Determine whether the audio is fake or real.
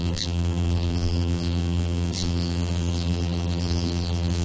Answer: fake